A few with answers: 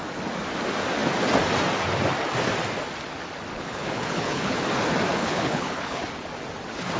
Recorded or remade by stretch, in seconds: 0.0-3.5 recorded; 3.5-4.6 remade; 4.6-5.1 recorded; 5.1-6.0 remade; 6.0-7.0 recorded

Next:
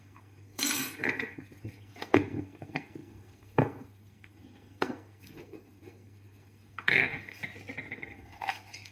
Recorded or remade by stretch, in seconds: 0.0-7.4 remade; 7.4-7.9 recorded; 7.9-8.9 remade

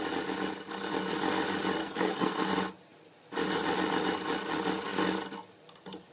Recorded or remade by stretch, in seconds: 0.0-1.8 recorded; 1.8-2.5 remade; 2.5-6.1 recorded

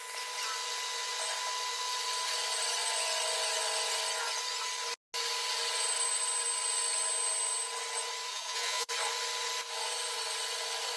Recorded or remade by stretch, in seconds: 0.0-8.3 recorded; 8.3-8.9 remade; 8.9-11.0 recorded